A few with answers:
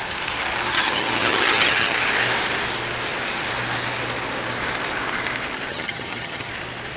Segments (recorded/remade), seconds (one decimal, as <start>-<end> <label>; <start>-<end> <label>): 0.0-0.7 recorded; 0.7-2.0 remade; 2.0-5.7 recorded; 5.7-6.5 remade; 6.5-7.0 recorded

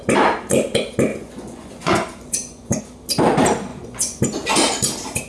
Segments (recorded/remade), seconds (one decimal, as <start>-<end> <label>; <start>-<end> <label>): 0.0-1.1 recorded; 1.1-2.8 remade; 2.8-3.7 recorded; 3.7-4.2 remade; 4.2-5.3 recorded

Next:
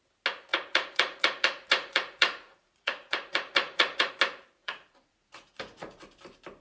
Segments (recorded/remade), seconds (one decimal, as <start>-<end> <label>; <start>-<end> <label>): 0.0-0.5 recorded; 0.5-4.1 remade; 4.1-4.6 recorded; 4.6-6.0 remade; 6.0-6.6 recorded